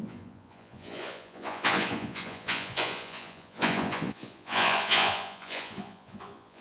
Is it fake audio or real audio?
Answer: fake